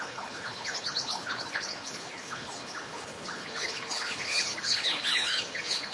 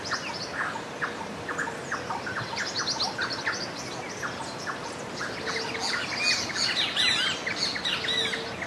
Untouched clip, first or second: second